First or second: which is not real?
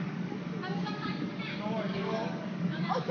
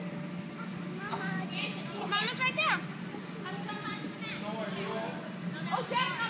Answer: first